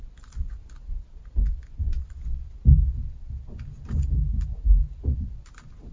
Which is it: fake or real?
real